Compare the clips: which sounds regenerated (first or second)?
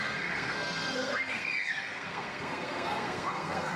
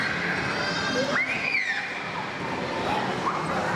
first